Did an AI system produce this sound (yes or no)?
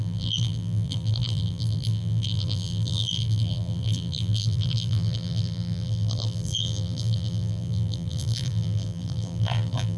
yes